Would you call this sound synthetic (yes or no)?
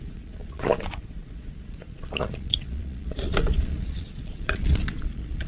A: yes